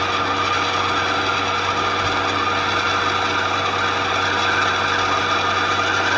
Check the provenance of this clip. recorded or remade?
recorded